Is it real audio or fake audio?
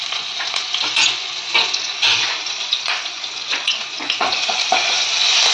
fake